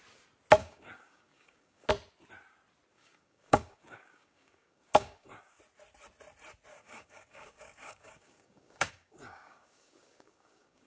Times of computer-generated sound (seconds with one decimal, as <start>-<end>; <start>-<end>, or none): 0.6-1.9; 2.9-5.6; 6.7-10.9